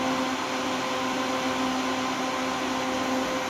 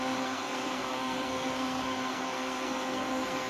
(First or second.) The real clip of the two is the first